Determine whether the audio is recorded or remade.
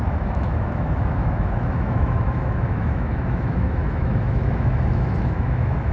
remade